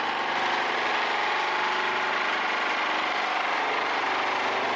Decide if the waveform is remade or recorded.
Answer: recorded